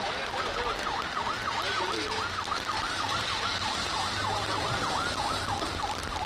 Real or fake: real